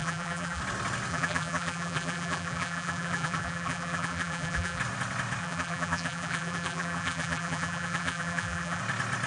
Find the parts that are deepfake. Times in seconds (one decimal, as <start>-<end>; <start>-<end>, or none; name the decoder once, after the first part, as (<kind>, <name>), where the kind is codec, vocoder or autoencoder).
0.0-0.6 (vocoder, BigVGAN v2); 1.1-4.8; 5.4-8.8